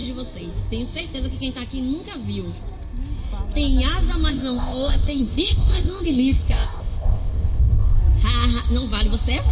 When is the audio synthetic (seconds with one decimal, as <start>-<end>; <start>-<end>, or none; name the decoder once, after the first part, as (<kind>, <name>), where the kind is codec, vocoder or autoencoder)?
4.3-8.0 (codec, ZipCodec)